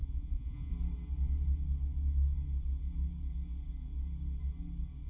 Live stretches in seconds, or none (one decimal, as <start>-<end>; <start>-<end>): 0.7-5.1